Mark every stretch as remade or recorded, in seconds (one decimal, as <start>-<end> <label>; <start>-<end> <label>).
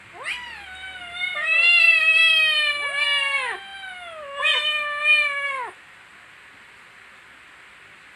0.0-8.2 recorded